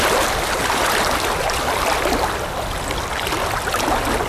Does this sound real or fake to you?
real